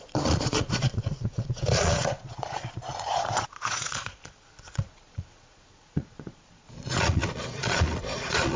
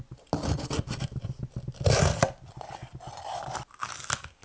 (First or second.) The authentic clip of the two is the second